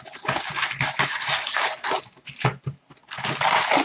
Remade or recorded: recorded